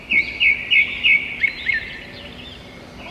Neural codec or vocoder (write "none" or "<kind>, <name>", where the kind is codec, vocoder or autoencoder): none